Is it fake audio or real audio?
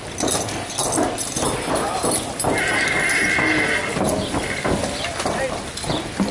real